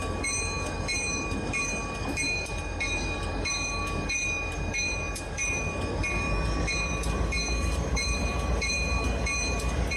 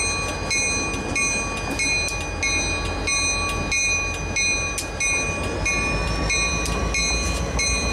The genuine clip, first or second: second